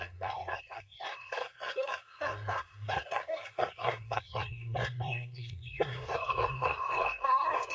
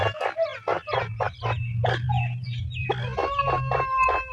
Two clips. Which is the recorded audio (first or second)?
second